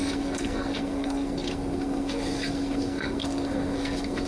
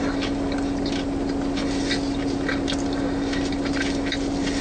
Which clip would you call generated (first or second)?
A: first